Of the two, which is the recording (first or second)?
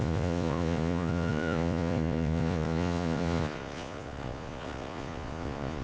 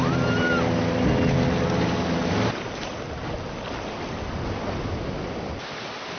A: second